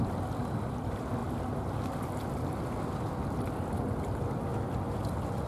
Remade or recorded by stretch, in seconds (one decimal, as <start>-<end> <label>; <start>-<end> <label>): 0.0-5.5 recorded